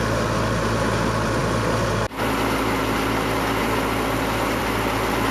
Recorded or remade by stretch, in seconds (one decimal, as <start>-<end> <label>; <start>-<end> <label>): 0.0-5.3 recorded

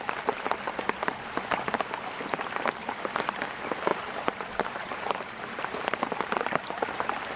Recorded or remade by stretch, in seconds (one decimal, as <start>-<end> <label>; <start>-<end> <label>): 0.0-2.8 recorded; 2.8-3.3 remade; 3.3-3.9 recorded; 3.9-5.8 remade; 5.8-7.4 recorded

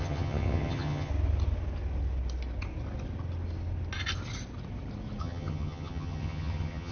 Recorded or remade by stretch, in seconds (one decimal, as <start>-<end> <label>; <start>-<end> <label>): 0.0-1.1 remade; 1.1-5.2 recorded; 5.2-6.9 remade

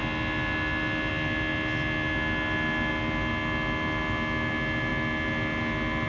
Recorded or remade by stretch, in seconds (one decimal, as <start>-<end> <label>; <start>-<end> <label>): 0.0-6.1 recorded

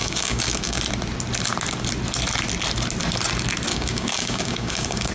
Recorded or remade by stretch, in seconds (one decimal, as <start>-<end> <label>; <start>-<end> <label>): 0.0-0.8 remade; 0.8-3.7 recorded; 3.7-5.1 remade